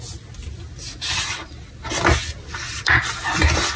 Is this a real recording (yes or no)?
yes